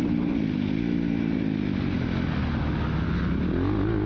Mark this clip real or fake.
real